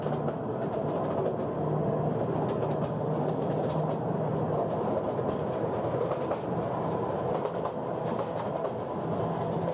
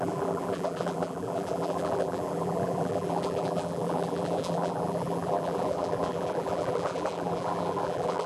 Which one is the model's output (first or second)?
second